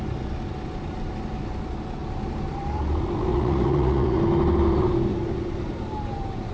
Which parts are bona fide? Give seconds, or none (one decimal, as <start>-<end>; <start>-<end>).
0.0-3.3; 4.2-6.5